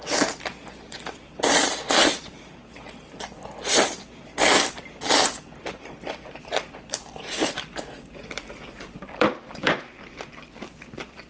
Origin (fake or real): fake